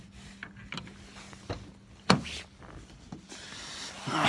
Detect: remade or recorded recorded